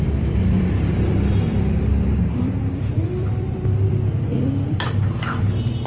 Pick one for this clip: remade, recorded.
remade